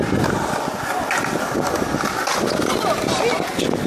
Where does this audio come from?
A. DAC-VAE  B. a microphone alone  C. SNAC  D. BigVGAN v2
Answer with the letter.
B